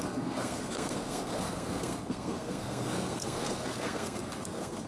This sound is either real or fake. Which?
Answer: fake